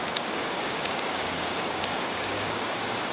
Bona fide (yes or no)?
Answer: no